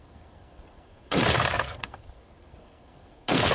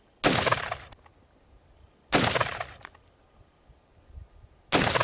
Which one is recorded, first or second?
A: second